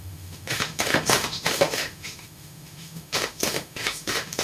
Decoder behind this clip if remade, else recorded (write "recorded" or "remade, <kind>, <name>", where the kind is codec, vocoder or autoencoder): remade, autoencoder, DAC-VAE